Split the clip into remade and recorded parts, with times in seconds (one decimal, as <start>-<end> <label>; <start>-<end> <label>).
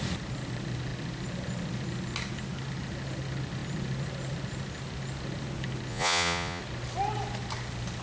0.0-5.9 recorded; 5.9-6.6 remade; 6.6-8.0 recorded